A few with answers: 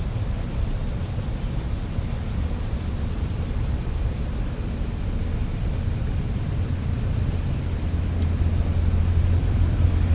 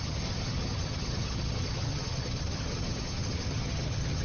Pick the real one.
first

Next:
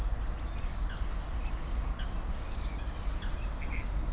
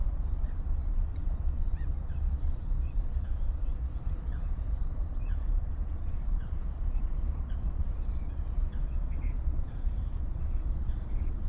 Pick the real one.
first